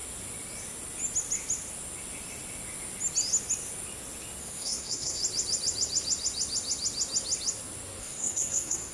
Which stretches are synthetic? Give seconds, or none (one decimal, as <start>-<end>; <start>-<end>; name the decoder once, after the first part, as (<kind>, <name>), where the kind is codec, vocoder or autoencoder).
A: 4.4-5.2 (codec, SNAC); 8.0-8.9